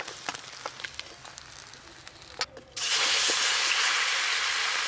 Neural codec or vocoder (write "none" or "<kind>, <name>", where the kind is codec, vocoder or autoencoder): none